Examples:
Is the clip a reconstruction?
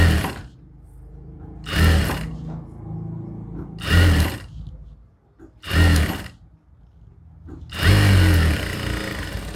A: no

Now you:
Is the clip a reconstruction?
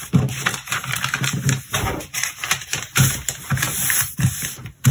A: yes